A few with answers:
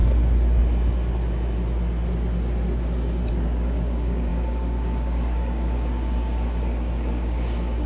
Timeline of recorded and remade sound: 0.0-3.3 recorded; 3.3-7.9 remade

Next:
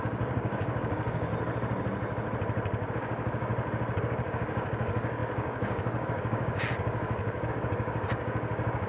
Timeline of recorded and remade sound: 0.0-1.3 remade; 1.3-2.9 recorded; 2.9-3.5 remade; 3.5-4.0 recorded; 4.0-8.9 remade